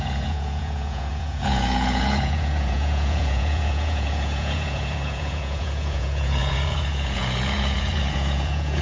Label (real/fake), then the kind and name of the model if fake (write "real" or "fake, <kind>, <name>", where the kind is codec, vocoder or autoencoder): fake, vocoder, Vocos